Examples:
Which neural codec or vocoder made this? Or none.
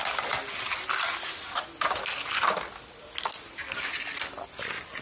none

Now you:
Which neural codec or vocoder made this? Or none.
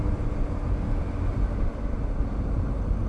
none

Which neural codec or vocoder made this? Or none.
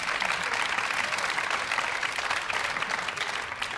none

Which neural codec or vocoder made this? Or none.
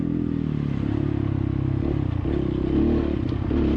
none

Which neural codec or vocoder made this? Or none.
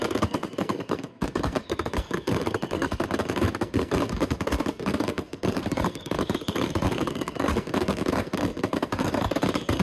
codec, SNAC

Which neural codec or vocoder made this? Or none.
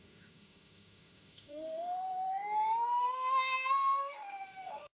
autoencoder, DAC-VAE